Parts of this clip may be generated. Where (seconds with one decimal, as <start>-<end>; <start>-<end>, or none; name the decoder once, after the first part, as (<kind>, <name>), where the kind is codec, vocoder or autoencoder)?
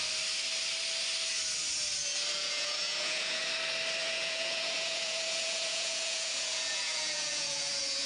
2.4-3.5 (vocoder, Vocos); 4.0-8.1